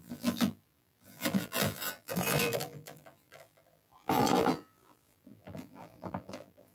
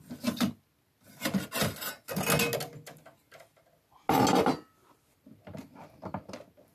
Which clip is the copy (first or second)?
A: first